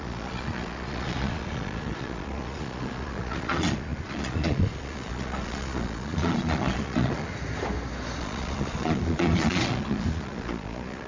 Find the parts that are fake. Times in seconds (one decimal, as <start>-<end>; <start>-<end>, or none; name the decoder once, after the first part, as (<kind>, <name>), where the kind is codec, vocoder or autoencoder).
0.0-7.3 (vocoder, Vocos); 8.2-11.1